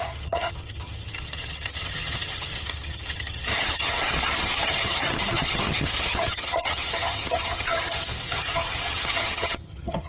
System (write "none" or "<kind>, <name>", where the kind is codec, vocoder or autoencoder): vocoder, HiFi-GAN